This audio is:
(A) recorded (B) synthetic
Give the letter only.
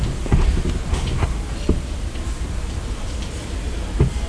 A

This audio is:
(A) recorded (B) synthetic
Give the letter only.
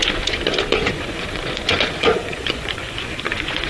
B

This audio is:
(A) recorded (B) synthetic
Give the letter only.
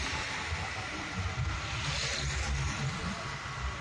A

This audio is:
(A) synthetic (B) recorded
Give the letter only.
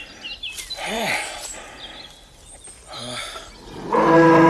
B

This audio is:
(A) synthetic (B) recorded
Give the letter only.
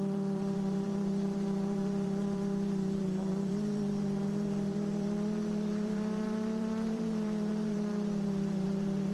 A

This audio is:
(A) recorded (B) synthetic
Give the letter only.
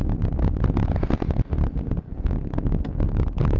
A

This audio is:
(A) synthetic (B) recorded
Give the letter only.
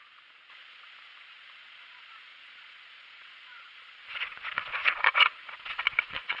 A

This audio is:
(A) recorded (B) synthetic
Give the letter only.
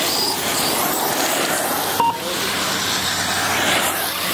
A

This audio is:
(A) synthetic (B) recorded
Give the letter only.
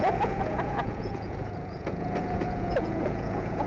A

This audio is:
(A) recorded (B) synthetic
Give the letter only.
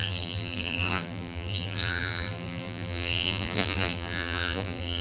B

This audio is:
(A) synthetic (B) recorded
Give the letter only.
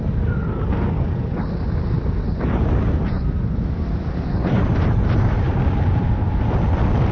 B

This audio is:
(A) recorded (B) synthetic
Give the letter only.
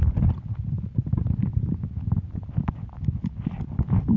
A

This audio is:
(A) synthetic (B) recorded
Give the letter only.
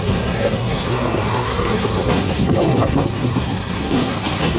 A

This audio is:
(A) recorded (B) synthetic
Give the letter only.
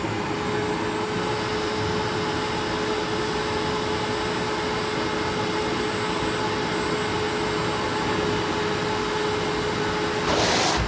A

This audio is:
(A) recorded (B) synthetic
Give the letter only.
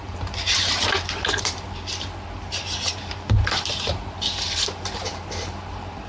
B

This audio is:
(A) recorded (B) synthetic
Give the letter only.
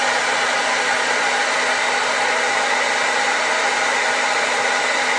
A